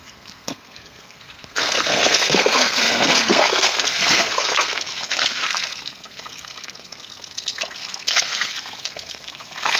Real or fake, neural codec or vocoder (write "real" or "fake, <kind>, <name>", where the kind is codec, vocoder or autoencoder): fake, codec, SNAC